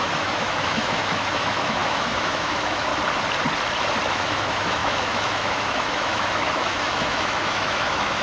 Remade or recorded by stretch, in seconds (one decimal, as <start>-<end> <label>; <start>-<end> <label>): 0.0-2.9 remade; 2.9-4.1 recorded; 4.1-8.2 remade